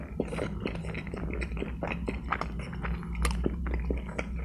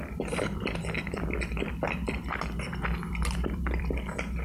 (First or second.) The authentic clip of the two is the first